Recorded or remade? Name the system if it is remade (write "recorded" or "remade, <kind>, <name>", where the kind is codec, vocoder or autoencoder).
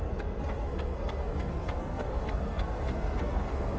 remade, codec, SNAC